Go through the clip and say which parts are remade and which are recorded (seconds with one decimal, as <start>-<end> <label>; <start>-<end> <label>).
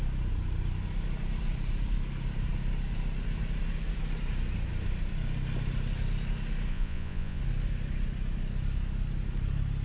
0.0-6.7 recorded; 6.7-7.4 remade; 7.4-9.8 recorded